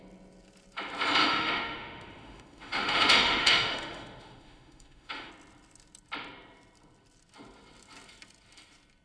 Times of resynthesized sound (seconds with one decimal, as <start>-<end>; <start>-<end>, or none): 1.2-5.3